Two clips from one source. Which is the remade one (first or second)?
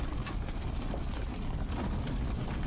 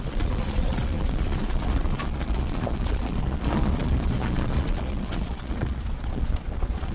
second